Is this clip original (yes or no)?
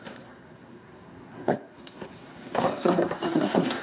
no